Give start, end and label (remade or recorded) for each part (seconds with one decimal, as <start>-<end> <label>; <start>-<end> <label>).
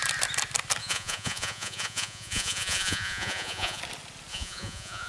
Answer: 0.0-0.8 recorded; 0.8-3.8 remade; 3.8-4.3 recorded; 4.3-5.1 remade